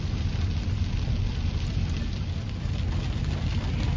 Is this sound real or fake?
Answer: real